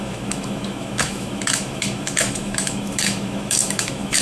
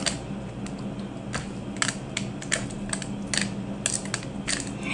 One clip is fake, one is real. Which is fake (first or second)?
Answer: first